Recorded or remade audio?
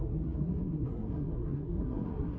remade